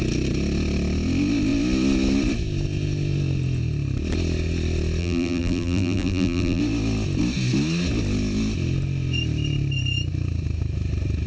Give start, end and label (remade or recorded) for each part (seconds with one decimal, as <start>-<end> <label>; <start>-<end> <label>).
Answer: 0.0-5.0 recorded; 5.0-6.6 remade; 6.6-11.3 recorded